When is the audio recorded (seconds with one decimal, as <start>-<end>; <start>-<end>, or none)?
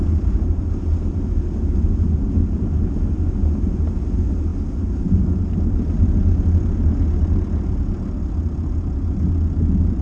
0.0-10.0